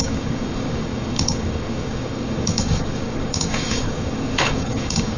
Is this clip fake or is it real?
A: fake